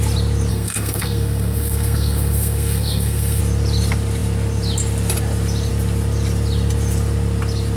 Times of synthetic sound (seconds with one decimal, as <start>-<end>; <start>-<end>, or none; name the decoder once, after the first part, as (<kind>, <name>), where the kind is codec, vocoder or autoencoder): 0.5-3.4 (codec, SNAC)

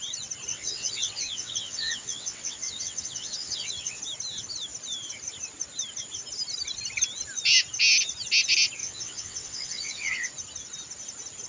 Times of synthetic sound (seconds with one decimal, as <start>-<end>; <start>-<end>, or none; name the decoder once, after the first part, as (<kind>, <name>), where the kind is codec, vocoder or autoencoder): 0.5-4.0 (vocoder, WaveNeXt); 8.8-10.3

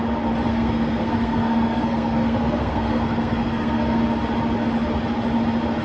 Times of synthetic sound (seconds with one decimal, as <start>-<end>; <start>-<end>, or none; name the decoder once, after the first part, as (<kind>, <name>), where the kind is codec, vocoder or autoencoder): 0.5-4.0 (codec, SNAC)